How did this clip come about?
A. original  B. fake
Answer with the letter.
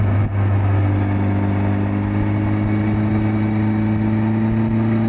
A